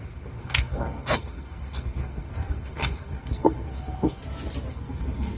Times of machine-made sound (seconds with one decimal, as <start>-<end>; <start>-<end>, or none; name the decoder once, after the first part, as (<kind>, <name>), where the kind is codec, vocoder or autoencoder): 0.0-4.2 (codec, SNAC); 4.7-5.4